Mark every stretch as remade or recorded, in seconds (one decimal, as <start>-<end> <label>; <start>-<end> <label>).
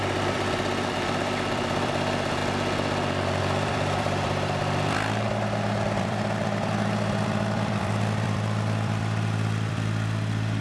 0.0-2.4 remade; 2.4-3.4 recorded; 3.4-10.6 remade